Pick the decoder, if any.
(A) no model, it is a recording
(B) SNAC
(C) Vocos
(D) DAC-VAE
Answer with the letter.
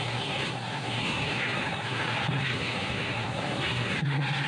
B